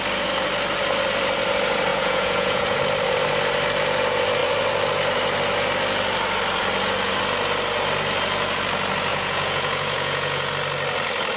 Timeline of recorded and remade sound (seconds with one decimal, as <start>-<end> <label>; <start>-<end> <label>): 0.0-1.9 recorded; 1.9-2.8 remade; 2.8-9.1 recorded; 9.1-10.5 remade; 10.5-11.4 recorded